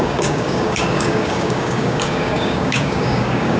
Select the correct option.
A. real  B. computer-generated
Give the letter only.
B